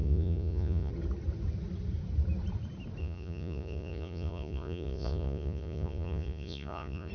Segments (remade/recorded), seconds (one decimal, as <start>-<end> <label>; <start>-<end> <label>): 0.0-0.9 remade; 0.9-3.0 recorded; 3.0-7.1 remade